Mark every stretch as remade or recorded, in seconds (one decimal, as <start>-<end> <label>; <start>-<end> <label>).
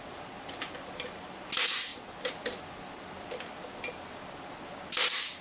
0.0-5.4 recorded